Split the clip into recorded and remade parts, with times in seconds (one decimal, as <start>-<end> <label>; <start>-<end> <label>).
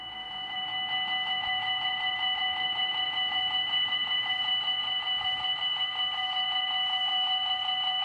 0.0-0.7 remade; 0.7-1.3 recorded; 1.3-8.0 remade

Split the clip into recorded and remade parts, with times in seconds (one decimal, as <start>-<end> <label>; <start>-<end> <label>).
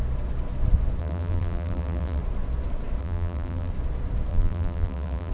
0.0-1.0 recorded; 1.0-2.2 remade; 2.2-3.0 recorded; 3.0-3.7 remade; 3.7-4.3 recorded; 4.3-5.3 remade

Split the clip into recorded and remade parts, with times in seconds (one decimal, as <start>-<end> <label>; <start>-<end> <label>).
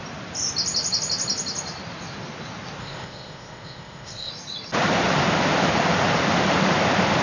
0.0-2.8 recorded; 2.8-4.3 remade; 4.3-7.2 recorded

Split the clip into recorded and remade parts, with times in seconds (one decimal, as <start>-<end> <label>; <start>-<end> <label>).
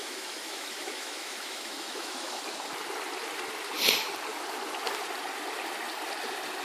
0.0-2.4 remade; 2.4-6.6 recorded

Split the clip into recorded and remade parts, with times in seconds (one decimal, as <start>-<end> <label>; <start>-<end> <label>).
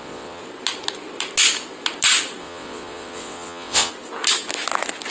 0.0-0.4 remade; 0.4-2.4 recorded; 2.4-3.9 remade; 3.9-5.1 recorded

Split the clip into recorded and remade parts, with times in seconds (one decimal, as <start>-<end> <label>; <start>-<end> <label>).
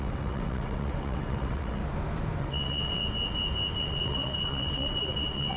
0.0-1.8 remade; 1.8-2.4 recorded; 2.4-3.0 remade; 3.0-3.8 recorded; 3.8-5.6 remade